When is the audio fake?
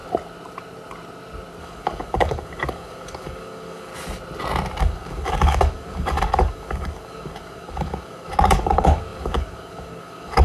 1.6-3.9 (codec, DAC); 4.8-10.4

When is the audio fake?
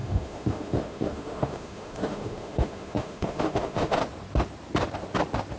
0.0-4.0 (autoencoder, DAC-VAE)